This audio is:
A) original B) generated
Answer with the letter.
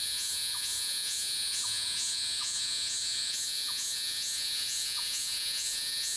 B